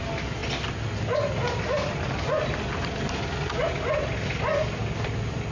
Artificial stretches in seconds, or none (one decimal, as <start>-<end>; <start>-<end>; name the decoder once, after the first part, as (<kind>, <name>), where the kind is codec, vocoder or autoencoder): none